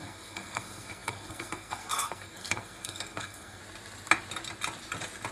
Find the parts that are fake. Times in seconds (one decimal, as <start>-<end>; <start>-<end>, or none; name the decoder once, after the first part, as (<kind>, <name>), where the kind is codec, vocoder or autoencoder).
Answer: 0.0-3.6 (codec, SNAC)